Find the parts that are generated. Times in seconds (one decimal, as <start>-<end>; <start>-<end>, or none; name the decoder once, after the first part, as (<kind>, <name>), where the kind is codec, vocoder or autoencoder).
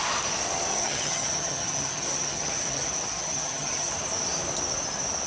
0.7-3.9 (vocoder, HiFi-GAN)